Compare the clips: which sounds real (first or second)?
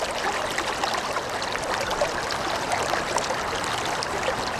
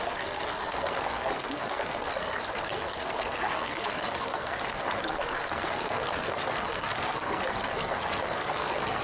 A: first